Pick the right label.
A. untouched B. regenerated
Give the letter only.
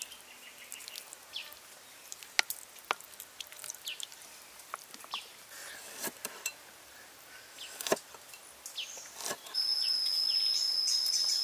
A